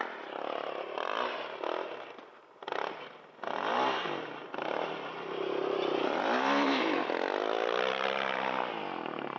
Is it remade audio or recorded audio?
recorded